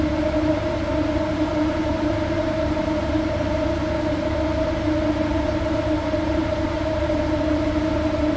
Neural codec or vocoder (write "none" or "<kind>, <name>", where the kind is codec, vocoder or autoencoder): vocoder, BigVGAN v2